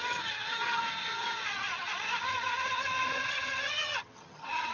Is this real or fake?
fake